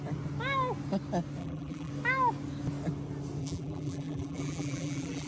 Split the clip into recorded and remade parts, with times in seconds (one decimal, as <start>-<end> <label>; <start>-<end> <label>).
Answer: 0.0-1.4 recorded; 1.4-1.9 remade; 1.9-3.4 recorded; 3.4-5.3 remade